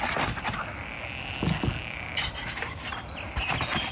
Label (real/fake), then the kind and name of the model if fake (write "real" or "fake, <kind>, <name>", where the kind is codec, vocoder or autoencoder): real